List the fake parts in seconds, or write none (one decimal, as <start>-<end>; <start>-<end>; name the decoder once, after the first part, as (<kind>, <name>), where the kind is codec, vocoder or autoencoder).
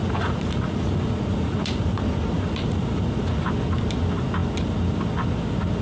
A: 0.0-3.5 (vocoder, Vocos)